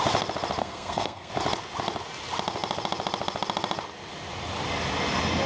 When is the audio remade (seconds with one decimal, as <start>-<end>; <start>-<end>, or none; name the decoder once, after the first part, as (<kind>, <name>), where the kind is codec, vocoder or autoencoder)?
0.6-1.3 (codec, SNAC)